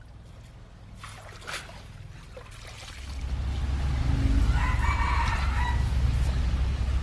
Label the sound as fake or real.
real